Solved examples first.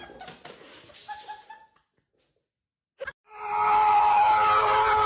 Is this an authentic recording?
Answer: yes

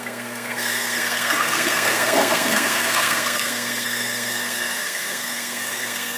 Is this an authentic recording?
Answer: no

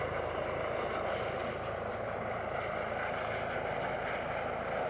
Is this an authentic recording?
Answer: yes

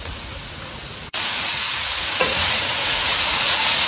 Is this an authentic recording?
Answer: no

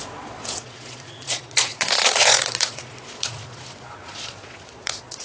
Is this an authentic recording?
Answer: no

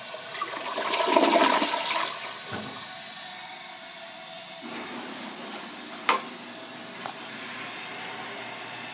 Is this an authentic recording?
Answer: yes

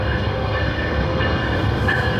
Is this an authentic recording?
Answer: no